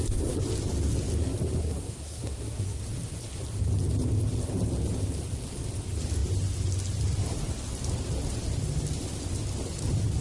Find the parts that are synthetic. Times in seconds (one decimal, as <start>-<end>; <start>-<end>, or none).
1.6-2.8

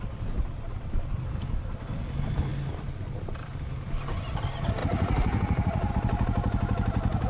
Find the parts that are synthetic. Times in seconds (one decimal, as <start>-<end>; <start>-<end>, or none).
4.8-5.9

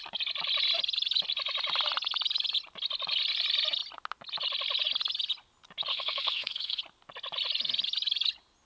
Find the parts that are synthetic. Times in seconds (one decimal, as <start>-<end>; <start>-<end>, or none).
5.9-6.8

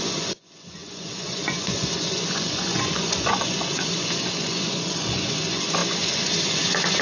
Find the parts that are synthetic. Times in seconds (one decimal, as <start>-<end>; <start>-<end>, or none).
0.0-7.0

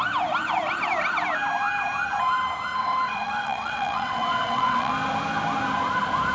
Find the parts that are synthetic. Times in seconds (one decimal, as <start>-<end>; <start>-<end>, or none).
2.8-4.9

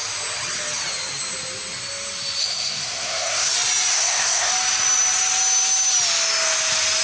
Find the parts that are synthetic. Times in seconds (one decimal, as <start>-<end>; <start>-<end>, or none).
2.4-3.5; 3.9-4.5